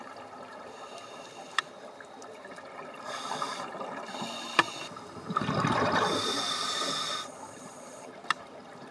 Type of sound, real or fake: fake